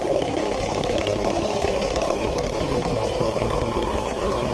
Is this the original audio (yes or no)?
no